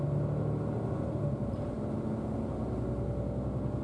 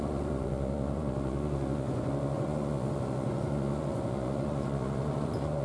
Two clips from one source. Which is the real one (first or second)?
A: first